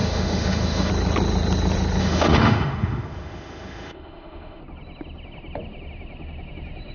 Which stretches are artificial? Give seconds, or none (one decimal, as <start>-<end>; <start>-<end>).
0.0-0.9; 2.0-4.6